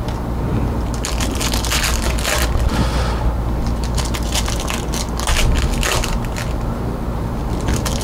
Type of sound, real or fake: real